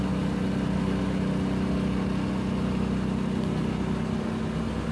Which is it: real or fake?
real